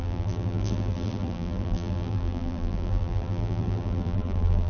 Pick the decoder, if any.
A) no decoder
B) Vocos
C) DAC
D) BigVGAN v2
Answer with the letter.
D